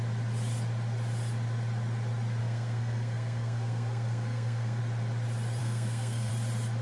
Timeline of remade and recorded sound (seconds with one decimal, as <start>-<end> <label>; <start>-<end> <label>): 0.0-2.4 recorded; 2.4-4.8 remade; 4.8-5.6 recorded; 5.6-6.3 remade; 6.3-6.8 recorded